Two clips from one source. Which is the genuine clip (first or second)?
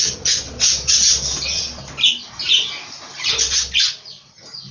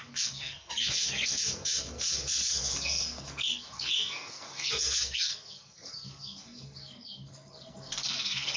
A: first